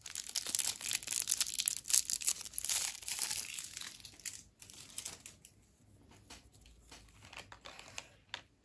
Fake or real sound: real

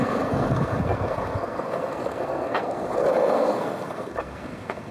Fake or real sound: fake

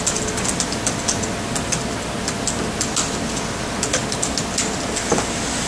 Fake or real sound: real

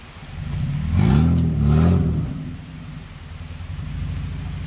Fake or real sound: real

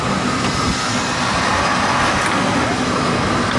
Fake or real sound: real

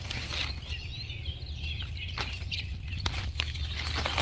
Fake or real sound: real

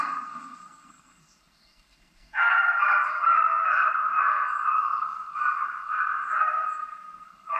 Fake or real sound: fake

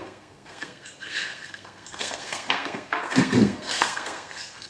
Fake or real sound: fake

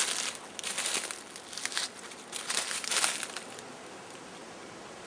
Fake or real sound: real